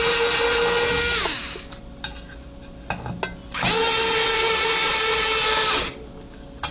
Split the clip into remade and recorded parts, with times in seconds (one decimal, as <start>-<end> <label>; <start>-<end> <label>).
0.0-6.7 recorded